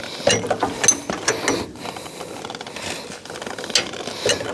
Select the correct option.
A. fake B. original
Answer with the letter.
B